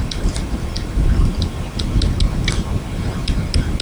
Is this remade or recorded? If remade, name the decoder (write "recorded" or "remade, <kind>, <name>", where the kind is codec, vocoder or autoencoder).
remade, vocoder, BigVGAN v2